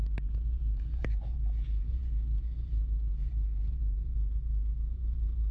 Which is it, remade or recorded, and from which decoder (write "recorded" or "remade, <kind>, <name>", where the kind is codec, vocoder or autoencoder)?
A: recorded